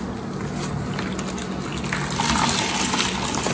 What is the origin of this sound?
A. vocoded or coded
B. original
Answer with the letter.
B